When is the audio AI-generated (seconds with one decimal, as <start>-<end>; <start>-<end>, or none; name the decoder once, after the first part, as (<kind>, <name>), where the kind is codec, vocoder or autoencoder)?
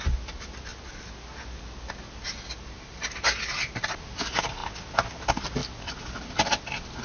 0.7-1.4 (vocoder, BigVGAN v2); 5.6-7.0